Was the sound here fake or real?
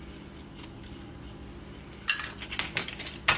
real